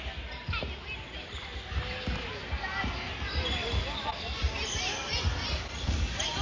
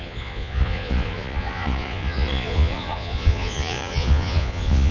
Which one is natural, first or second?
first